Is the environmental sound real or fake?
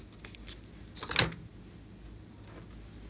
real